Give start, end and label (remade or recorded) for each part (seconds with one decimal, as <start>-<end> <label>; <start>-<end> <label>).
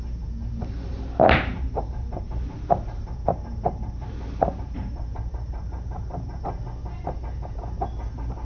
0.0-1.5 recorded; 1.5-6.4 remade; 6.4-8.4 recorded